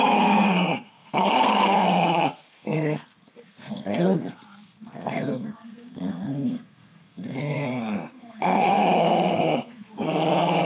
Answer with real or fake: fake